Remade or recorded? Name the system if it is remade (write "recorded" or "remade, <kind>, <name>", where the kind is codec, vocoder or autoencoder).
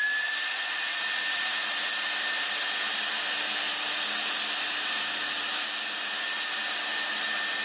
recorded